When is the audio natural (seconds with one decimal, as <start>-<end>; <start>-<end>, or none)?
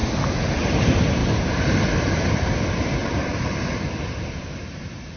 0.6-1.2; 2.4-3.0